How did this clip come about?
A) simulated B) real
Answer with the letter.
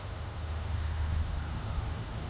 A